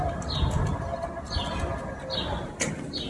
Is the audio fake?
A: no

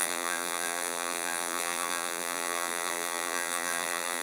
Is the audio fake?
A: yes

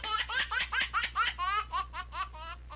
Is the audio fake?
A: no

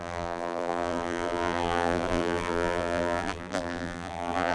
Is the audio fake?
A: yes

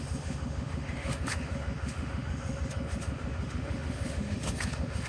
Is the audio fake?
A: yes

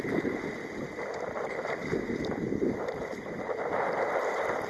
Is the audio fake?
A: no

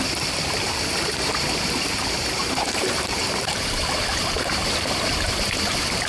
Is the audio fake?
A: yes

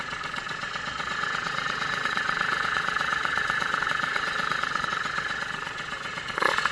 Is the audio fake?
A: yes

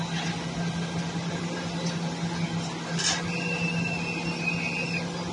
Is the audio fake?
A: no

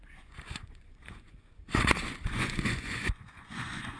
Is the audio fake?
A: yes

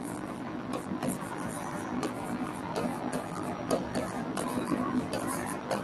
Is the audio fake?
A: yes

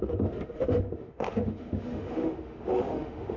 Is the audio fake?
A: yes